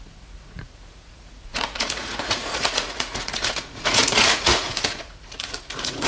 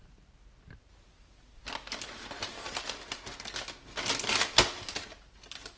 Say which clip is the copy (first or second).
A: first